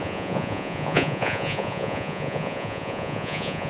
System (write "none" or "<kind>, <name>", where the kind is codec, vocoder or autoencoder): vocoder, Vocos